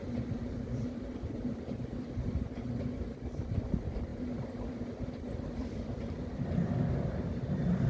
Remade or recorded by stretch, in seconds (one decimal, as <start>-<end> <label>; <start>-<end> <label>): 0.0-7.9 remade